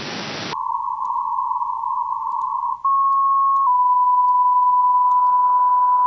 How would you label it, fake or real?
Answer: real